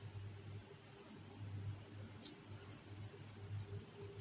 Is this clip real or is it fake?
real